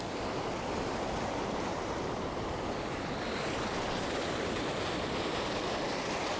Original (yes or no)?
yes